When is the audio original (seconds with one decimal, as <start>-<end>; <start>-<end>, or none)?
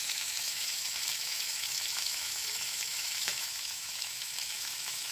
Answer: none